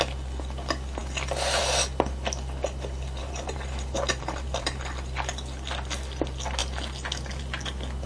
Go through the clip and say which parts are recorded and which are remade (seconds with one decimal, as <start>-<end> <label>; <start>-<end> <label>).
0.0-3.2 recorded; 3.2-4.8 remade; 4.8-8.1 recorded